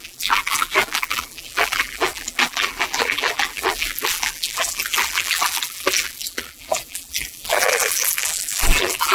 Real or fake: fake